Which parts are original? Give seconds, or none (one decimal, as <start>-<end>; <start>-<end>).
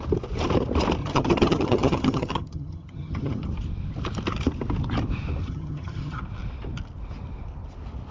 0.0-1.0; 3.5-5.4; 6.2-8.1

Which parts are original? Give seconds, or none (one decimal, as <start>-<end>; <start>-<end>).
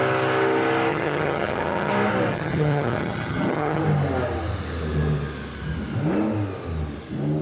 0.0-0.9; 1.9-2.3; 3.8-7.4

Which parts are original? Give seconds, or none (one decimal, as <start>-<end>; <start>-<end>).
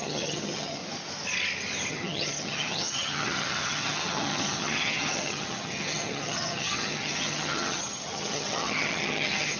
0.8-1.9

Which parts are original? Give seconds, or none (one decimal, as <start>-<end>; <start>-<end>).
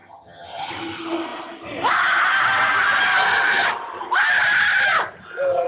0.7-5.7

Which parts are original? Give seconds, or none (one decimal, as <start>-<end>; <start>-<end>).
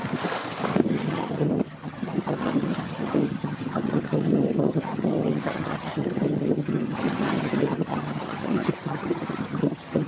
0.0-0.9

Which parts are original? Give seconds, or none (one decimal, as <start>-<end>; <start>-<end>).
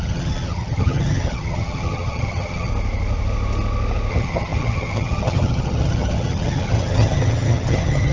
2.7-4.1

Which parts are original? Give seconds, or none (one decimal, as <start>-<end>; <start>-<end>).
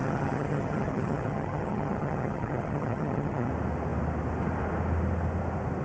3.5-5.8